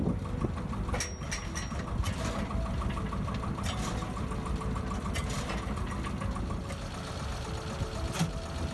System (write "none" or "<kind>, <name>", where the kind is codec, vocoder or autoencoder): none